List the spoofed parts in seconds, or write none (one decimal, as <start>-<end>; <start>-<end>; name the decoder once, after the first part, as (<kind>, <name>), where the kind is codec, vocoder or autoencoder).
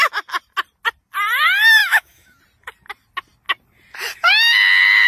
1.8-2.4 (autoencoder, DAC-VAE)